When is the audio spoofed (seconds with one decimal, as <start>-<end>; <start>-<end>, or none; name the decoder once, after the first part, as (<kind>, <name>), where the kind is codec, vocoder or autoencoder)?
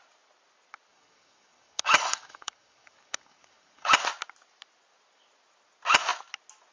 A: 0.9-3.9 (codec, DAC)